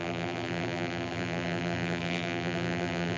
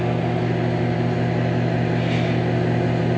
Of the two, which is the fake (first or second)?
first